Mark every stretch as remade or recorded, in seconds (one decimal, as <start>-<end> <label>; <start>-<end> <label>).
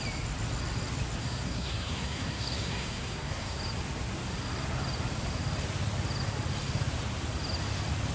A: 0.0-1.2 recorded; 1.2-3.6 remade; 3.6-8.1 recorded